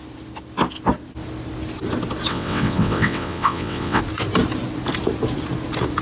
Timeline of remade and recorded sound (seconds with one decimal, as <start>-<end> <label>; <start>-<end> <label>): 0.0-2.3 recorded; 2.3-4.0 remade; 4.0-6.0 recorded